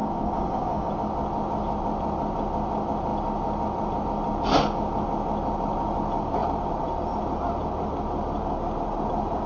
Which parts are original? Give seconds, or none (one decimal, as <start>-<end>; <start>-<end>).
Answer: 0.9-9.5